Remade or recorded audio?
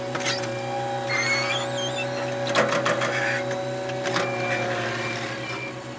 recorded